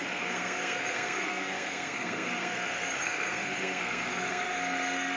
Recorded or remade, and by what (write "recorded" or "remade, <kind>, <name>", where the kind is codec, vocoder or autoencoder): remade, codec, SNAC